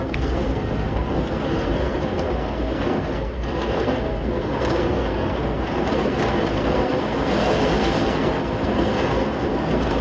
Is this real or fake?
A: fake